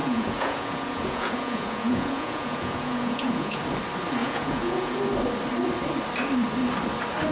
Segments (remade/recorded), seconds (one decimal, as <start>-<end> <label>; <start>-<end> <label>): 0.0-3.6 remade; 3.6-4.2 recorded; 4.2-5.0 remade; 5.0-7.3 recorded